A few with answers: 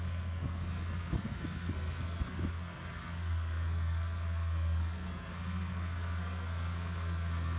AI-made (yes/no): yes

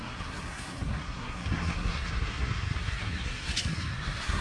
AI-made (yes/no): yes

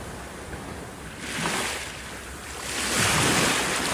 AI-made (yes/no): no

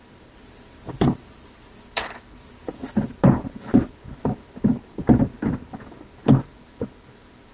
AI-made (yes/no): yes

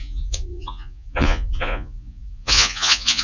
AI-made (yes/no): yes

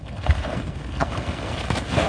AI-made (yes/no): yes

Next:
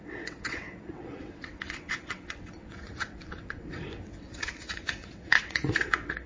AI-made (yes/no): yes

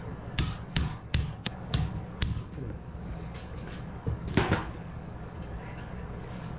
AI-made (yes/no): yes